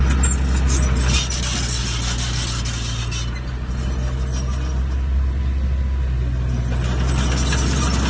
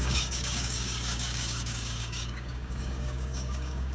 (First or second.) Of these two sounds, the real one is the first